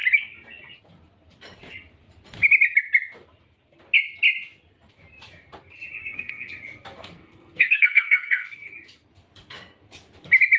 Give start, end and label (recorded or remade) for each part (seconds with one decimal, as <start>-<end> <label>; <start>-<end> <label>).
0.0-6.0 recorded; 6.0-6.5 remade; 6.5-7.0 recorded; 7.0-8.7 remade; 8.7-10.6 recorded